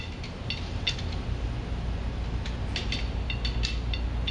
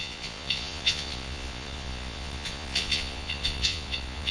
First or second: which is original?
first